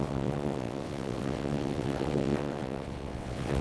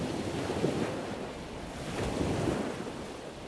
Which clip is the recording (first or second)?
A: second